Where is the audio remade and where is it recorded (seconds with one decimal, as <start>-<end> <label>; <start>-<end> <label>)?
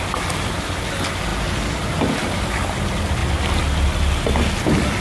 0.0-5.0 recorded